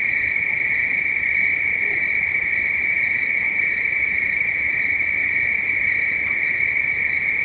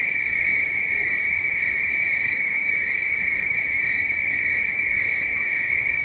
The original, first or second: first